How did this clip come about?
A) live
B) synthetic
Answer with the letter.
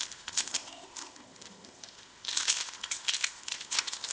B